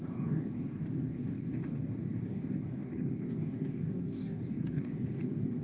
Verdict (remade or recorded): remade